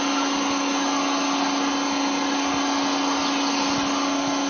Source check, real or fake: real